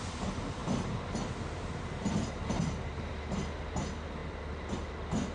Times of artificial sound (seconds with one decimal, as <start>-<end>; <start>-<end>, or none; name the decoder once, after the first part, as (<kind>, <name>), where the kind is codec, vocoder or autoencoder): none